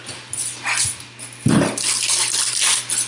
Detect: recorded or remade recorded